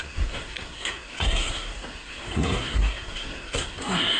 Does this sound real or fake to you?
fake